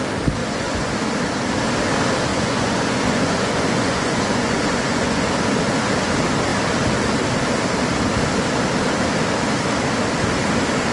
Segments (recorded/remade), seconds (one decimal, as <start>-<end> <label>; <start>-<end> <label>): 0.0-0.4 recorded; 0.4-0.9 remade; 0.9-2.3 recorded; 2.3-5.3 remade; 5.3-10.9 recorded